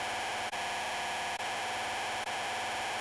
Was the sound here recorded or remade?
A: recorded